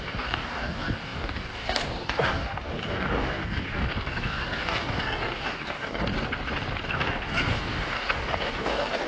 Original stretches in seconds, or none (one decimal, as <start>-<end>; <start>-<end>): 6.1-6.9